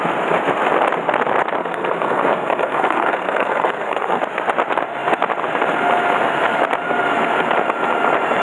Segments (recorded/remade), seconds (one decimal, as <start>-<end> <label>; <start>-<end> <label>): 0.0-1.6 recorded; 1.6-4.2 remade; 4.2-8.4 recorded